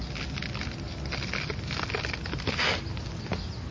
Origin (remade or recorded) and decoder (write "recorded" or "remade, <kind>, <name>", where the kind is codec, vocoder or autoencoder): recorded